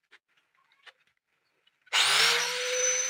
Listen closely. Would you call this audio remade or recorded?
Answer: remade